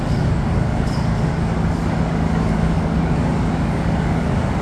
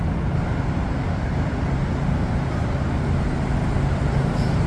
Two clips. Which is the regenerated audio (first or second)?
first